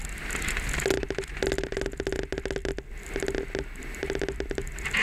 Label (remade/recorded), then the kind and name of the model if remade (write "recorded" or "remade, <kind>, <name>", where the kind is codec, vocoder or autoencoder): recorded